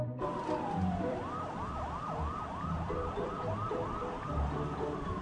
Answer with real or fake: fake